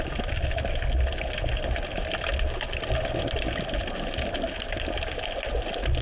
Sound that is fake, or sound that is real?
real